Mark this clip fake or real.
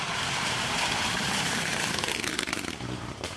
fake